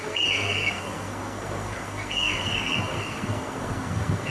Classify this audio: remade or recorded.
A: remade